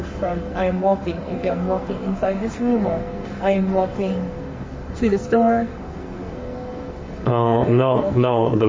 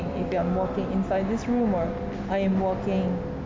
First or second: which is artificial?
first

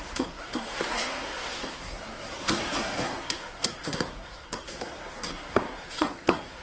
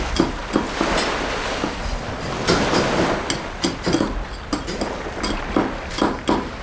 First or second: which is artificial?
first